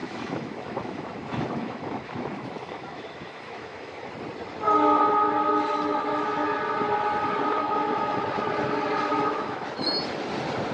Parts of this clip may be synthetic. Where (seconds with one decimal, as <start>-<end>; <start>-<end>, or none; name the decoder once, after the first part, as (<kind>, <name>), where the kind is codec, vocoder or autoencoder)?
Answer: 0.0-4.1 (autoencoder, DAC-VAE); 7.6-8.2; 9.1-10.0